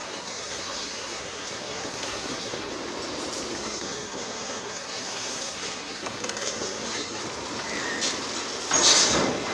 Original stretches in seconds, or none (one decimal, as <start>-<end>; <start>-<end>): 2.7-3.5; 7.2-9.5